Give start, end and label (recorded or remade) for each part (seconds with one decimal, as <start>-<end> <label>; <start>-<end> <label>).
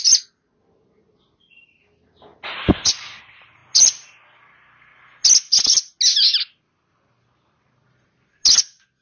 0.0-9.0 recorded